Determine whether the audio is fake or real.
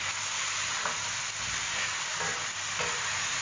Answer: real